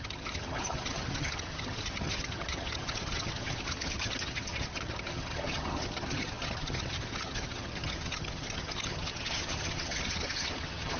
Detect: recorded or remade remade